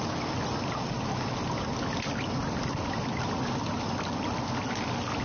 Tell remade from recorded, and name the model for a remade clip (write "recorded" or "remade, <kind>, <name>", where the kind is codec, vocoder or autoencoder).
recorded